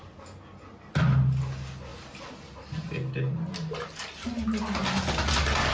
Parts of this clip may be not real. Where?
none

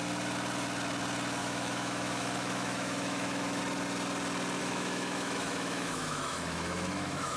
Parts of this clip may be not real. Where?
1.4-3.6 (autoencoder, DAC-VAE); 4.6-7.4

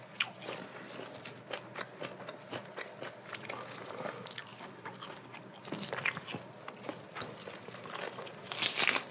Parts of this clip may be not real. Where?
none

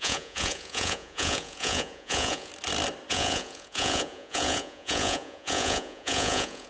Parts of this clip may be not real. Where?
0.0-2.5 (vocoder, Vocos); 3.1-6.7

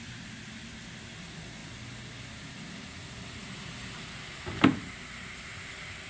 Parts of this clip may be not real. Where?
none

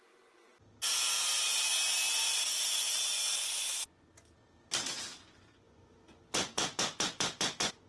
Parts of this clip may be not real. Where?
0.0-0.5 (vocoder, Vocos); 2.1-4.1; 5.1-7.9

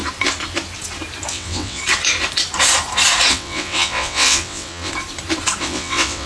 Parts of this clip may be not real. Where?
1.3-1.8 (vocoder, WaveNeXt); 3.3-4.9; 5.6-6.3